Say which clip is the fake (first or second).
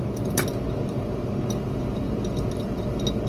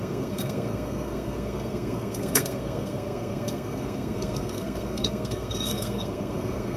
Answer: second